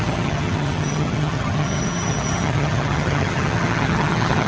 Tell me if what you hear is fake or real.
fake